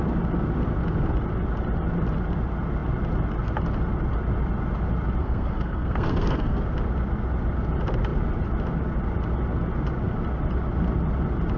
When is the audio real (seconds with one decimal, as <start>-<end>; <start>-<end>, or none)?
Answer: 0.0-5.2; 6.6-11.6